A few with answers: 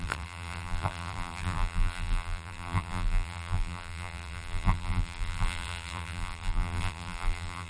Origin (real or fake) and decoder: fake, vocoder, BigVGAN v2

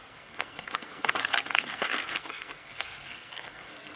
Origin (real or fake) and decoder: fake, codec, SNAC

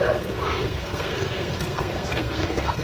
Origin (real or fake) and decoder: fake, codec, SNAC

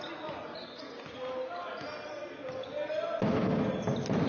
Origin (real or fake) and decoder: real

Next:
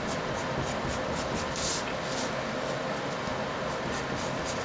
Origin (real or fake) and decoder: real